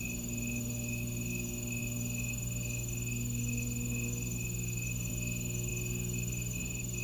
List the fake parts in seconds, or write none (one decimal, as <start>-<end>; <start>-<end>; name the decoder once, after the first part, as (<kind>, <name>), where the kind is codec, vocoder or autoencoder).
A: none